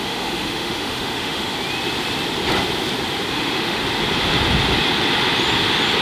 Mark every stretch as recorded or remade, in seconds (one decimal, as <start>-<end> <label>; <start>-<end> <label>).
0.0-1.5 remade; 1.5-3.3 recorded; 3.3-3.8 remade; 3.8-6.0 recorded